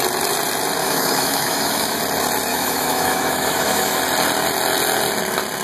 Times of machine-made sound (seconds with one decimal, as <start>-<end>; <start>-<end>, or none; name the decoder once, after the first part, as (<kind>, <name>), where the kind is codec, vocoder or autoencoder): 0.8-2.0 (autoencoder, DAC-VAE); 2.5-4.0